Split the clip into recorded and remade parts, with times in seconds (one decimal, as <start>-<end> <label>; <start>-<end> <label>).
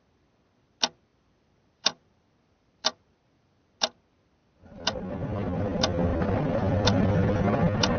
0.0-1.1 recorded; 1.1-3.6 remade; 3.6-4.4 recorded; 4.4-5.1 remade; 5.1-6.1 recorded; 6.1-7.4 remade; 7.4-8.0 recorded